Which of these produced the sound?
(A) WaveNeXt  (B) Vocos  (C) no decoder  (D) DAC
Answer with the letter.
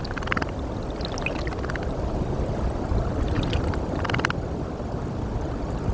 C